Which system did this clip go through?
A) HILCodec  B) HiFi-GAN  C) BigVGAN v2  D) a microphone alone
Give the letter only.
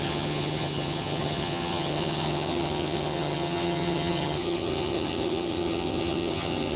B